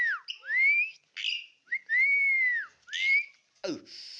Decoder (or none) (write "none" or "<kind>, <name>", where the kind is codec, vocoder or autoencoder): none